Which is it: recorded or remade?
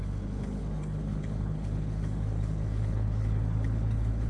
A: remade